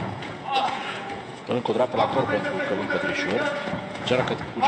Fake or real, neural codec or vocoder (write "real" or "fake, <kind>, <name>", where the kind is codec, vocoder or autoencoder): fake, vocoder, Vocos